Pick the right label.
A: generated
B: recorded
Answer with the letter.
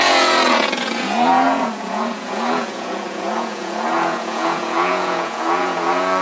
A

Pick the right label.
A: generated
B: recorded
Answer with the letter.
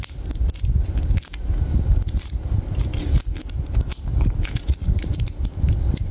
B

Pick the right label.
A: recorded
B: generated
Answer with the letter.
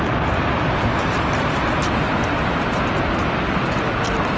A